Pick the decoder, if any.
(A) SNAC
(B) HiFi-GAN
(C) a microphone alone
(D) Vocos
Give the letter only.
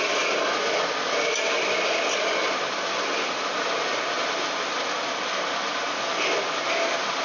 C